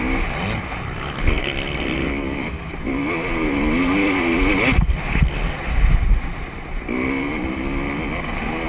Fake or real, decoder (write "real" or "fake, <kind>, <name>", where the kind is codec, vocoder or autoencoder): real